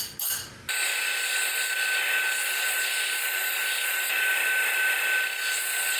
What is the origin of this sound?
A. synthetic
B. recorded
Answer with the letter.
B